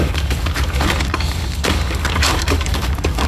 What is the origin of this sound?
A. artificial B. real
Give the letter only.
A